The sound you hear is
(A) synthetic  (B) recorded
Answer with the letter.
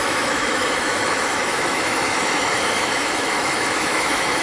A